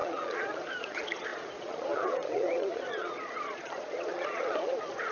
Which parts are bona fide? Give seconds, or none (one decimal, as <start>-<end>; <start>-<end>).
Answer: none